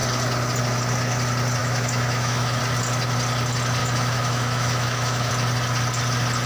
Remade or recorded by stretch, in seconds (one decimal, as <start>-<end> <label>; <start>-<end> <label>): 0.0-1.6 recorded; 1.6-2.6 remade; 2.6-3.8 recorded; 3.8-5.3 remade; 5.3-6.5 recorded